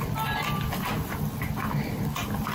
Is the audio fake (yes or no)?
no